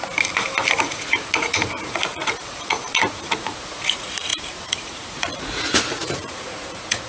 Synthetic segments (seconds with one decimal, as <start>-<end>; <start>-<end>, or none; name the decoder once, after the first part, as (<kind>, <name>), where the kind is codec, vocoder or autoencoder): 0.8-7.1 (vocoder, Vocos)